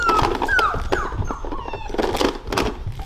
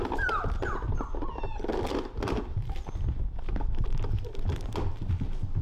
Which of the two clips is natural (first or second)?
first